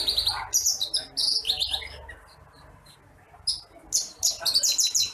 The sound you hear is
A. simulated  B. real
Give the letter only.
B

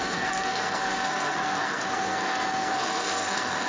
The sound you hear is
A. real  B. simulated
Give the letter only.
B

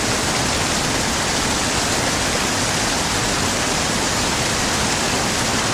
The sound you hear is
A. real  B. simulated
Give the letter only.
A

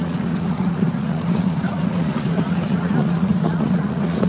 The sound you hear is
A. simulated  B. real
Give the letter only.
A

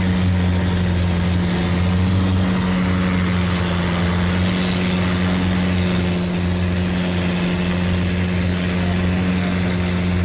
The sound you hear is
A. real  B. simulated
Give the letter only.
A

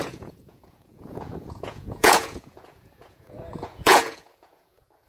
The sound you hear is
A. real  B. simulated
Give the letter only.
B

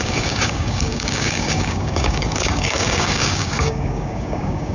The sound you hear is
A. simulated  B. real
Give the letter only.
A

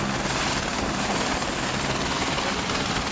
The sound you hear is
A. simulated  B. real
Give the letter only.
B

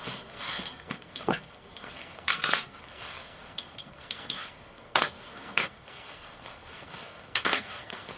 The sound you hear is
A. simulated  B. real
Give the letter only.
A